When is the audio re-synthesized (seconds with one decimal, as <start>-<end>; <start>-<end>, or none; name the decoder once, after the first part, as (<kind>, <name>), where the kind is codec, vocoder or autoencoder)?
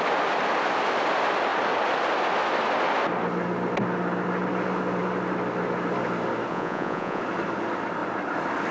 6.5-7.2 (vocoder, Vocos)